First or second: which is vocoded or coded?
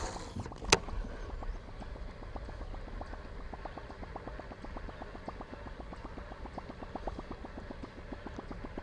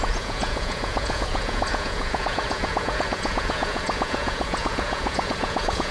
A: second